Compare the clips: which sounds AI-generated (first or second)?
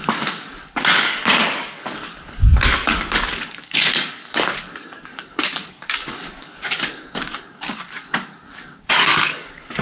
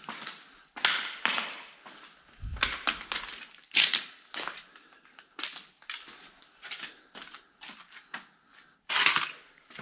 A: first